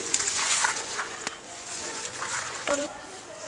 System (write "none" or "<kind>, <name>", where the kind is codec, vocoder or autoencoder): vocoder, Vocos